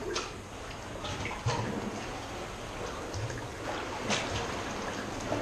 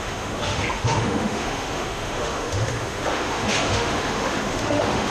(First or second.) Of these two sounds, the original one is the first